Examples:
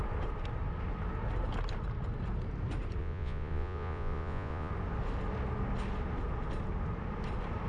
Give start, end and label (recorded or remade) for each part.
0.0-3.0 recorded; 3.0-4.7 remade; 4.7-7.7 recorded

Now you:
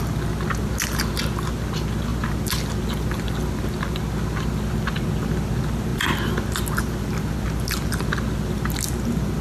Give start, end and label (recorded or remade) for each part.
0.0-9.4 recorded

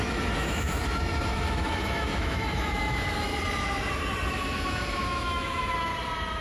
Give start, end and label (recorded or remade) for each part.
0.0-3.3 remade; 3.3-4.3 recorded; 4.3-5.9 remade; 5.9-6.4 recorded